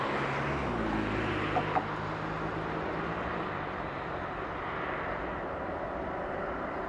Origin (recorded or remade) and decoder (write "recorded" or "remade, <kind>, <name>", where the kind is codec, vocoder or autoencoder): recorded